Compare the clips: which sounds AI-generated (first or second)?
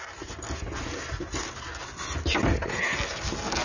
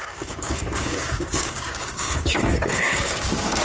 second